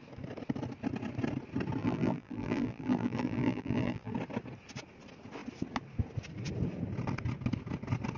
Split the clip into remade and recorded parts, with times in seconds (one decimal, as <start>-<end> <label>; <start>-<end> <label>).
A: 0.0-1.8 recorded; 1.8-4.1 remade; 4.1-8.2 recorded